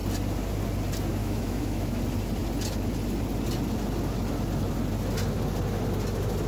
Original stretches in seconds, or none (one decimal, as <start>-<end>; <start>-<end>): 0.0-1.2; 2.0-6.5